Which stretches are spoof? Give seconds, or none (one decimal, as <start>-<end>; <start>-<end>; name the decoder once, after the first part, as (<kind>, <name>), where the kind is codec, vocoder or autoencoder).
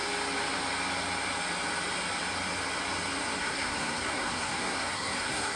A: 3.4-5.6 (codec, SNAC)